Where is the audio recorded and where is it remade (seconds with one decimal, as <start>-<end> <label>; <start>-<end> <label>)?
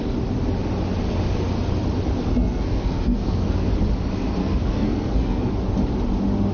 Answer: 0.0-2.3 recorded; 2.3-3.7 remade; 3.7-4.4 recorded; 4.4-5.5 remade; 5.5-6.5 recorded